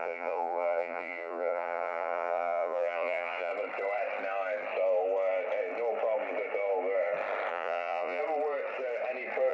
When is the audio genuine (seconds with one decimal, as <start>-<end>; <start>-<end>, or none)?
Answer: 3.5-7.5; 8.2-9.5